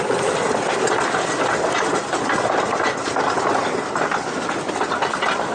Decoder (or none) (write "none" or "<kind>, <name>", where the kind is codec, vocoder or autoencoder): none